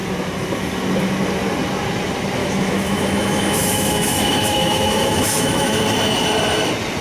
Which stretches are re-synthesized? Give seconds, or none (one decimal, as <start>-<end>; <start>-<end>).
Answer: 2.4-5.8